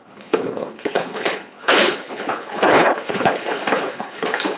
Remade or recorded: remade